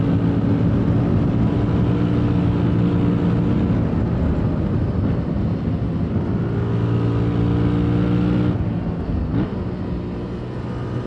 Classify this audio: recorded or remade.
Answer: recorded